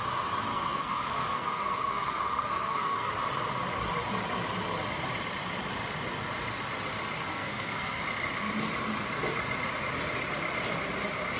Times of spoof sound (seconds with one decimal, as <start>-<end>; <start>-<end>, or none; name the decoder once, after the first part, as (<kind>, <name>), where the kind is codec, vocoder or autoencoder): 0.5-3.1 (codec, SNAC); 7.3-8.0